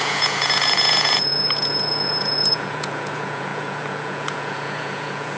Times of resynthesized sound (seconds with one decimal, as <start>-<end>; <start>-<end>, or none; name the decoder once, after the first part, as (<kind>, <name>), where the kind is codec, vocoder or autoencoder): 0.0-5.4 (vocoder, Vocos)